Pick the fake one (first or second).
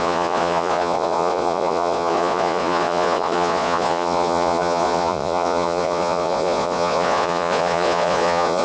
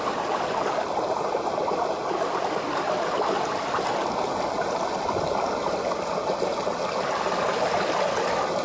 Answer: first